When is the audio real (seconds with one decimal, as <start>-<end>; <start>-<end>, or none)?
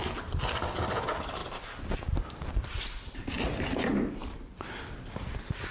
0.0-5.7